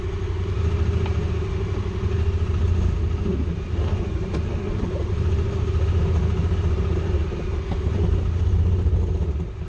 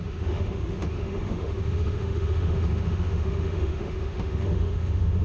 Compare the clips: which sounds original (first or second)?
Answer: first